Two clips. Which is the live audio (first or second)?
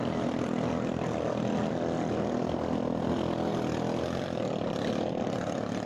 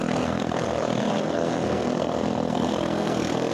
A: first